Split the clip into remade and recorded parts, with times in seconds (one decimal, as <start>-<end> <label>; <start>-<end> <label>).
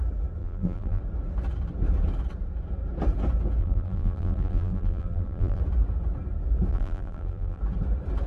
0.0-0.4 recorded; 0.4-1.0 remade; 1.0-3.6 recorded; 3.6-5.6 remade; 5.6-6.7 recorded; 6.7-7.6 remade; 7.6-8.3 recorded